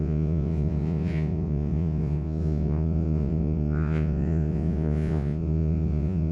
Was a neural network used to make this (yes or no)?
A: yes